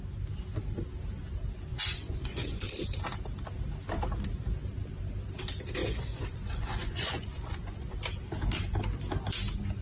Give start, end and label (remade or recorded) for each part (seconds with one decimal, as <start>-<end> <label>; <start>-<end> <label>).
0.0-1.7 recorded; 1.7-2.6 remade; 2.6-5.8 recorded; 5.8-7.9 remade; 7.9-9.8 recorded